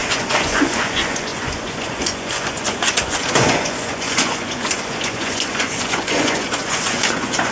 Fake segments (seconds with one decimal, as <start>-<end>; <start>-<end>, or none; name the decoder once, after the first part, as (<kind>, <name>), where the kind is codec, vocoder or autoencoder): 0.0-7.5 (vocoder, Vocos)